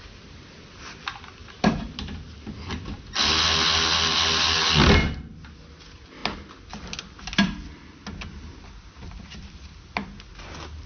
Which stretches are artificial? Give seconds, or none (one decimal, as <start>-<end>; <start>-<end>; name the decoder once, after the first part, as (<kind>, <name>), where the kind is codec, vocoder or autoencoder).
1.4-3.0 (vocoder, BigVGAN v2); 5.0-5.6